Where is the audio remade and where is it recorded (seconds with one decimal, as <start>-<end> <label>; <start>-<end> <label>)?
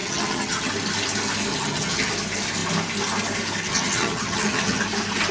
0.0-0.7 remade; 0.7-1.5 recorded; 1.5-2.1 remade; 2.1-3.7 recorded; 3.7-4.8 remade; 4.8-5.3 recorded